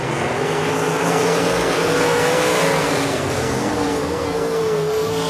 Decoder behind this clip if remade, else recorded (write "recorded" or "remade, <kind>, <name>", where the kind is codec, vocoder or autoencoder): remade, codec, SNAC